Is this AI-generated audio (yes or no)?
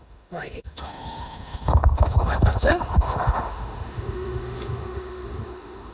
yes